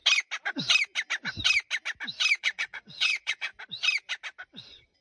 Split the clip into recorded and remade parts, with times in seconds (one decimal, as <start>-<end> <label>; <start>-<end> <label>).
0.0-2.4 recorded; 2.4-3.5 remade; 3.5-4.5 recorded; 4.5-5.0 remade